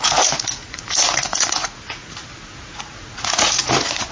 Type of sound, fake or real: fake